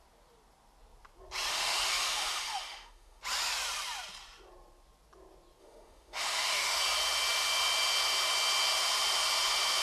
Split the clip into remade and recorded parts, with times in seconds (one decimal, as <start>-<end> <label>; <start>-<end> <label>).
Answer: 0.0-1.5 recorded; 1.5-3.2 remade; 3.2-5.6 recorded; 5.6-6.8 remade; 6.8-9.8 recorded